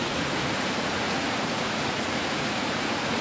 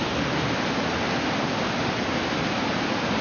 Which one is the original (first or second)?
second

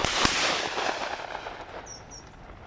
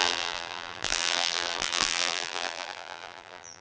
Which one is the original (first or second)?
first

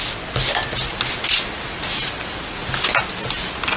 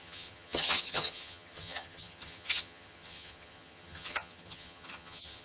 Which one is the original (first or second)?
first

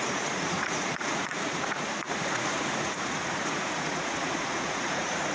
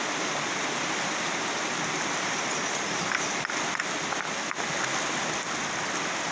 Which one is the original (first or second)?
second